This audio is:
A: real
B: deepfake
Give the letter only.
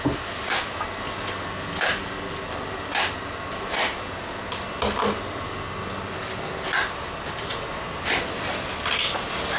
A